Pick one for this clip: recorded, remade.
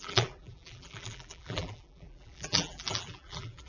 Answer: remade